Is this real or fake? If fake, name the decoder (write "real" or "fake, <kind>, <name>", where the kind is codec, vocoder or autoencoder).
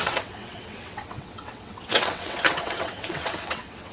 fake, vocoder, WaveNeXt